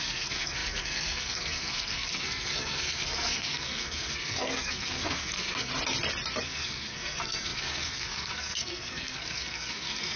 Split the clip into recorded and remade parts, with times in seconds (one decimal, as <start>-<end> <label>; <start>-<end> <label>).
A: 0.0-5.7 remade; 5.7-6.4 recorded; 6.4-10.2 remade